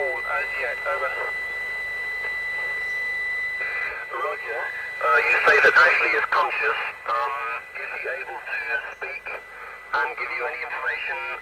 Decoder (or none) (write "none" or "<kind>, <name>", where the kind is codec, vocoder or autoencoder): none